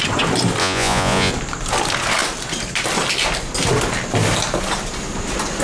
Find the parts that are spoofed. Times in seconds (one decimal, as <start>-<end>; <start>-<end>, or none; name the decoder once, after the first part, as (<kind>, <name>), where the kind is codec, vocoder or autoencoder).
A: 0.6-1.3 (vocoder, Vocos)